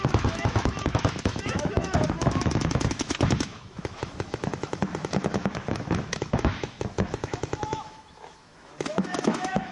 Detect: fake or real fake